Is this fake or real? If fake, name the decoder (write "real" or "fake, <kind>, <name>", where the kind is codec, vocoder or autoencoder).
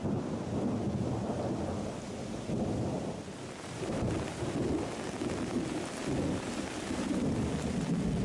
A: real